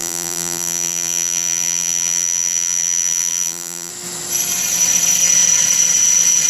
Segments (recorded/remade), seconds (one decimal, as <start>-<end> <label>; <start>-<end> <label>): 0.0-3.9 remade; 3.9-6.5 recorded